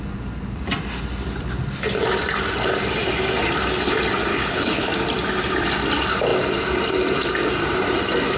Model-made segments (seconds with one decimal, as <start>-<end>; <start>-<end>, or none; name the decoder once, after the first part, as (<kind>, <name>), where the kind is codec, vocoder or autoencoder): 4.3-4.9 (codec, HILCodec)